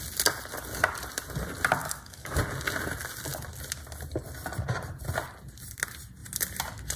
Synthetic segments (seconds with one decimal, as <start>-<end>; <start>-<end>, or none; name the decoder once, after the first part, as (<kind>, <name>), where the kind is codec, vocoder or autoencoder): 1.8-2.4 (codec, DAC)